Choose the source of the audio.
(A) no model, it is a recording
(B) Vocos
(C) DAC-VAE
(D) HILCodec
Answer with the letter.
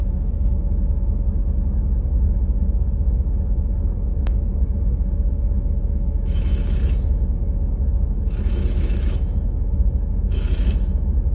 C